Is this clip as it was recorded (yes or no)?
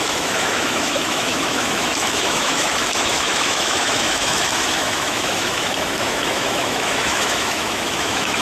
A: no